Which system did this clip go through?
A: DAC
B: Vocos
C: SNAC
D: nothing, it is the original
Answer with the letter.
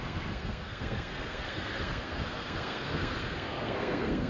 C